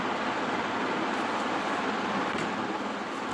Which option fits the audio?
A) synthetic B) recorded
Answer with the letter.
B